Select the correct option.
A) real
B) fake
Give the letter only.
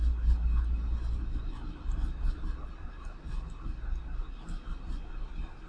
A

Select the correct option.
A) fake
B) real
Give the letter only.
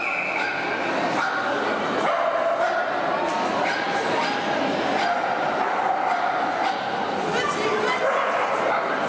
B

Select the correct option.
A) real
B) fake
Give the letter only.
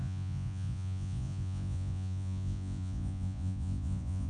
B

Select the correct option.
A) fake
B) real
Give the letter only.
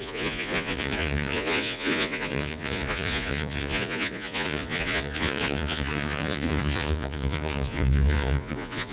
A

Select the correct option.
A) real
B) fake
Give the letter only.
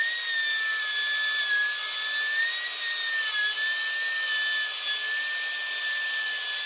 A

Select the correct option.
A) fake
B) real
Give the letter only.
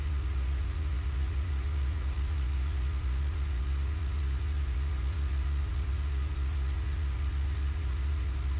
A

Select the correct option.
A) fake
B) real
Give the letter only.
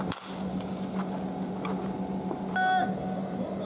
B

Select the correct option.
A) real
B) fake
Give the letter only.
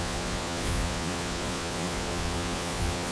B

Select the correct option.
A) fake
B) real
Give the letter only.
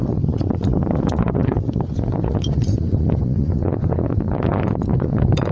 A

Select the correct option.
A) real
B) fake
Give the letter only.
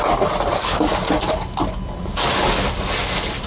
A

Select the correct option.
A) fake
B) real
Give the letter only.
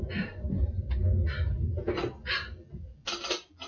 B